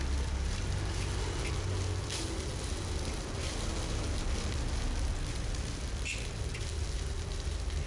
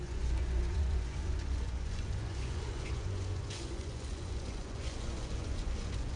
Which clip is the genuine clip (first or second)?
first